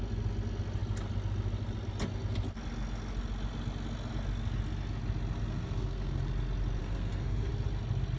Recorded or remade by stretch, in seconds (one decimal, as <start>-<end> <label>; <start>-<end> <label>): 0.0-5.5 recorded; 5.5-6.2 remade; 6.2-6.8 recorded; 6.8-7.5 remade; 7.5-8.2 recorded